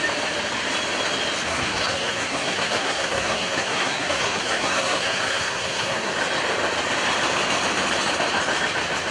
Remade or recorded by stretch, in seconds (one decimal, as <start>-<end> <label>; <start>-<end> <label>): 0.0-1.5 recorded; 1.5-6.1 remade; 6.1-9.1 recorded